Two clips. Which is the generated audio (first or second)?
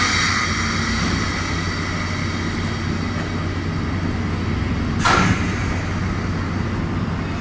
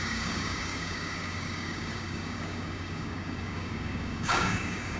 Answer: second